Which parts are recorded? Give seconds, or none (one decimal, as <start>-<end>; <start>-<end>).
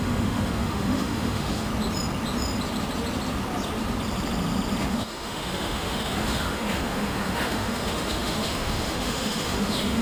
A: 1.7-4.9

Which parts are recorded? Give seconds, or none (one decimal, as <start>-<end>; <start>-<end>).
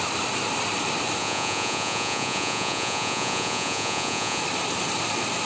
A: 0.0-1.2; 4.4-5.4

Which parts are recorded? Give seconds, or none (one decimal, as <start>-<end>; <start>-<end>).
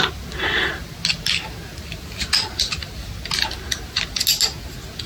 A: 0.0-5.1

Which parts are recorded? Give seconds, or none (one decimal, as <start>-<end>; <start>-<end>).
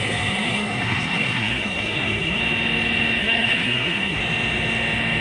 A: 2.4-3.2; 4.2-5.2